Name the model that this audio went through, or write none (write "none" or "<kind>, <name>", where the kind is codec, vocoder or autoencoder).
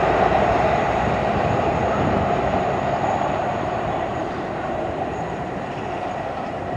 vocoder, BigVGAN v2